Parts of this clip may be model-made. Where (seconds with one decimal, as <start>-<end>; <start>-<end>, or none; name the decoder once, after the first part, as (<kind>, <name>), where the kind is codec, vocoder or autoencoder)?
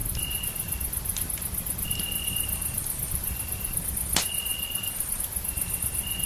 2.6-3.8 (vocoder, BigVGAN v2); 4.5-5.2